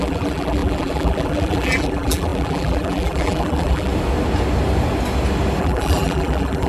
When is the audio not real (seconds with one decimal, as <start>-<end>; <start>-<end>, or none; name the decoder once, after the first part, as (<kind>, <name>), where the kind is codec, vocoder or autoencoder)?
0.0-3.9 (vocoder, BigVGAN v2); 5.6-6.7